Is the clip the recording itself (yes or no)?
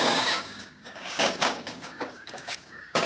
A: no